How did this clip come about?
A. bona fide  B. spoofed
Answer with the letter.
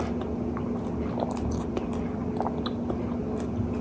A